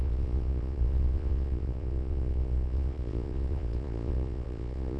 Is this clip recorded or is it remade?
remade